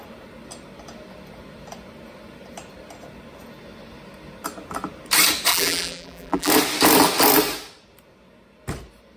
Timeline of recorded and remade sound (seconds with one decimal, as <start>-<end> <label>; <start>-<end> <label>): 0.0-5.5 recorded; 5.5-6.5 remade; 6.5-9.2 recorded